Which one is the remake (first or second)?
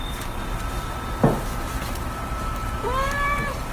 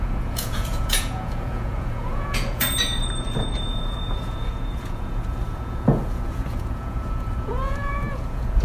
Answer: second